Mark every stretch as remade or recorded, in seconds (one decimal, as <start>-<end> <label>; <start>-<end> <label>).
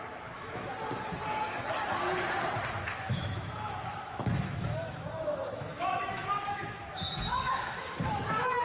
0.0-0.7 remade; 0.7-2.8 recorded; 2.8-8.6 remade